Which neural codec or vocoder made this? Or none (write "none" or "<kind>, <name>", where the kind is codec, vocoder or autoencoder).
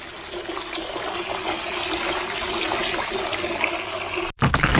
none